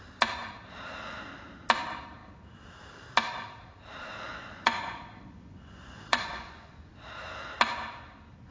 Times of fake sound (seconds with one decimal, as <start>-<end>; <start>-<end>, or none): 4.3-6.9